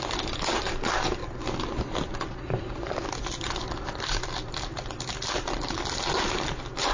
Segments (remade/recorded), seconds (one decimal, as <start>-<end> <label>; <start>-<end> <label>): 0.0-6.9 recorded